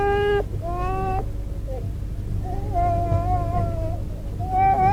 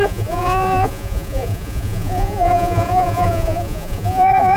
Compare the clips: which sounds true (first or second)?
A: first